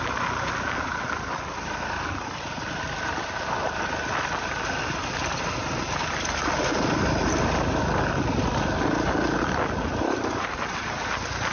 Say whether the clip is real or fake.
real